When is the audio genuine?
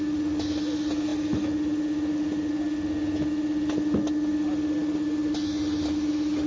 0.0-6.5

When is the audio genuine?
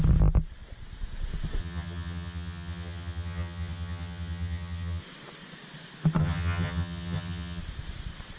0.0-1.6; 5.0-6.2; 7.6-8.4